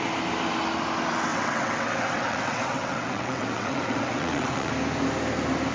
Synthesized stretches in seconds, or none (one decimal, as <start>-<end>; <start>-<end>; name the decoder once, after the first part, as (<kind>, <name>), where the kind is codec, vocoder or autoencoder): 1.3-4.7 (vocoder, WaveNeXt)